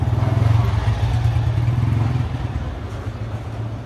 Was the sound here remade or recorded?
recorded